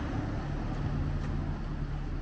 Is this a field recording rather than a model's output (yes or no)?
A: yes